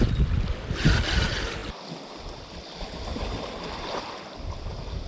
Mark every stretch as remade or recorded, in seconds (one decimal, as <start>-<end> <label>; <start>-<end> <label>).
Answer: 0.0-5.1 recorded